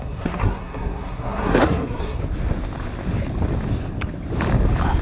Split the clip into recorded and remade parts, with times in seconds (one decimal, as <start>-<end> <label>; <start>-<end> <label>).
0.0-2.2 remade; 2.2-5.0 recorded